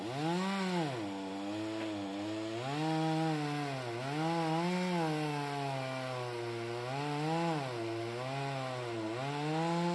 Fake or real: real